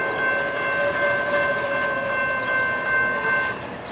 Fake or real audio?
real